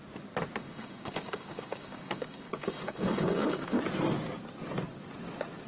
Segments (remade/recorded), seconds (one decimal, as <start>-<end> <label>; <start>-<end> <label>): 0.0-0.6 recorded; 0.6-3.8 remade; 3.8-5.7 recorded